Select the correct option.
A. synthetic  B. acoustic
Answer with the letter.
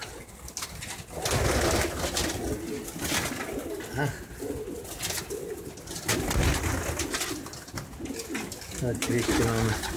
B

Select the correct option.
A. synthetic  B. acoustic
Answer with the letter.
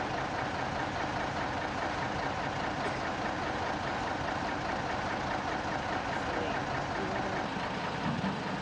B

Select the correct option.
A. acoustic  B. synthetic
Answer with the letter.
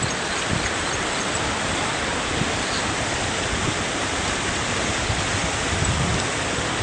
A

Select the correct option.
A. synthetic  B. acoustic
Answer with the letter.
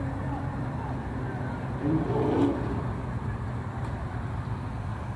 A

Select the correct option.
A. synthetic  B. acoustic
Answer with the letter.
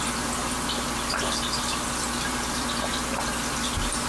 B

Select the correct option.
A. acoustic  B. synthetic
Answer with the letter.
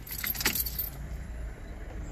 B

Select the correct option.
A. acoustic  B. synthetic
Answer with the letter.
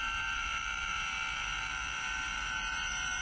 B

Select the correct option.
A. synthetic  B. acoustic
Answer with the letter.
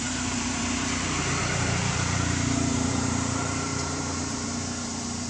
A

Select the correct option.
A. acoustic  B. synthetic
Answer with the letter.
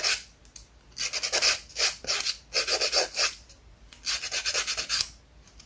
A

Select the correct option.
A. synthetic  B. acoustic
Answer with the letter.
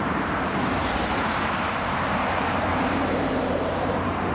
A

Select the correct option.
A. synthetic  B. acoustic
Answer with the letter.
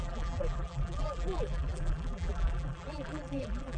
A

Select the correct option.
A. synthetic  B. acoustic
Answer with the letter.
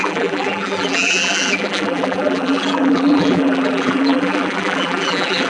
A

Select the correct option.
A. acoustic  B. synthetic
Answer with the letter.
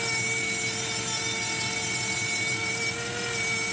A